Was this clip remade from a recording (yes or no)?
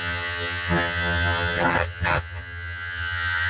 yes